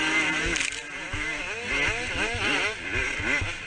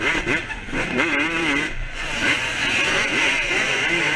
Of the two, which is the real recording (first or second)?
first